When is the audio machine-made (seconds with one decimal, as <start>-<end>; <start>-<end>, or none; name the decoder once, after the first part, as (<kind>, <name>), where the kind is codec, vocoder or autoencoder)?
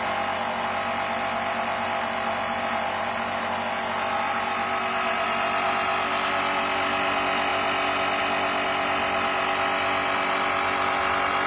none